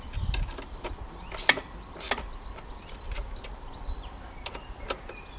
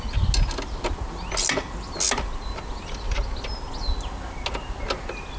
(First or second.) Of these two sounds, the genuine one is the second